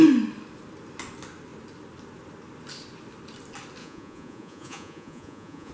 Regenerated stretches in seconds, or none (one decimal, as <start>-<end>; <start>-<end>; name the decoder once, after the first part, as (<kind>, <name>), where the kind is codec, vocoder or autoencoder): 3.8-5.7 (vocoder, Vocos)